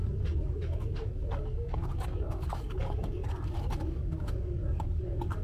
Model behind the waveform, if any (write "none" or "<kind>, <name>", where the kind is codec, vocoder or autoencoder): codec, DAC